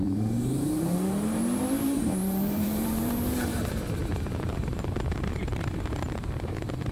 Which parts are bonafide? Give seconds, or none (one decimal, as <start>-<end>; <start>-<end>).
none